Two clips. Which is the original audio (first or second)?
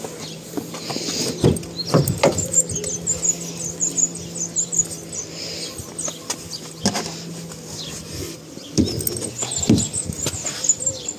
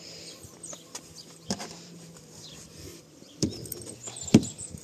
first